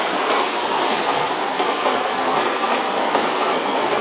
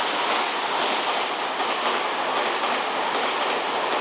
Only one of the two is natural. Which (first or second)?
second